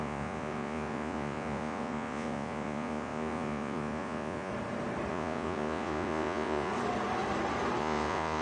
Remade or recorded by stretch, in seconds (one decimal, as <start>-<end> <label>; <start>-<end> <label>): 0.0-4.5 remade; 4.5-5.1 recorded; 5.1-6.7 remade; 6.7-7.8 recorded; 7.8-8.4 remade